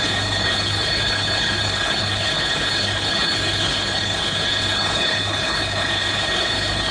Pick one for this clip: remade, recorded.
remade